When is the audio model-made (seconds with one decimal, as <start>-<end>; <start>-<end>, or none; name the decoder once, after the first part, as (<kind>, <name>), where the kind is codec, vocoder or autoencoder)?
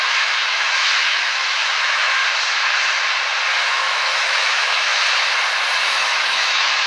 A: 0.0-2.2 (autoencoder, DAC-VAE); 3.6-4.9; 5.8-6.9